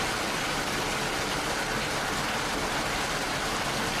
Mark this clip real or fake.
real